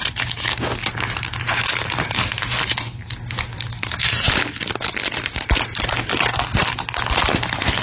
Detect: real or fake real